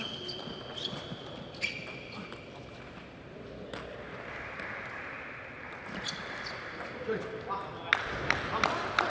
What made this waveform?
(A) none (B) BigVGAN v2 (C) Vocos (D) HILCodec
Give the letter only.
A